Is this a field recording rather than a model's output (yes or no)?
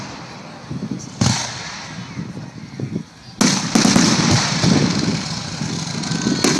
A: yes